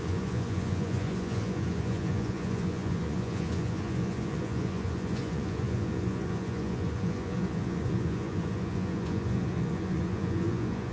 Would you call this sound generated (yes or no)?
yes